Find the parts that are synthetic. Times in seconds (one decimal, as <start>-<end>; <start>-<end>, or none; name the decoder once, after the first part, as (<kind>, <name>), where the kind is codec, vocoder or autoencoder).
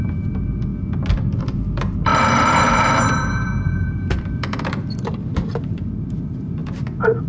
0.0-0.7 (vocoder, BigVGAN v2); 1.4-6.6